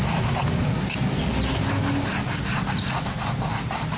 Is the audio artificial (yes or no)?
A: no